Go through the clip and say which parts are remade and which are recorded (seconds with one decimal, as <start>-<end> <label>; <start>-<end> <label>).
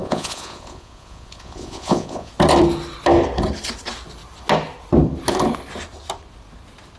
0.0-2.3 remade; 2.3-7.0 recorded